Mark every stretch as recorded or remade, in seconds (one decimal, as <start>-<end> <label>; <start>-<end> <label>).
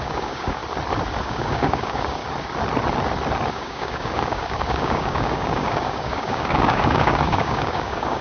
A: 0.0-0.6 remade; 0.6-1.2 recorded; 1.2-2.2 remade; 2.2-3.5 recorded; 3.5-8.2 remade